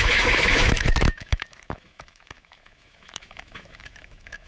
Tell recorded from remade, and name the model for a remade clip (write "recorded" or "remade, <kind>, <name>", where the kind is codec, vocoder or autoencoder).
remade, autoencoder, DAC-VAE